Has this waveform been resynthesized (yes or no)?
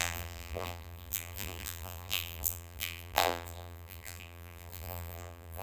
yes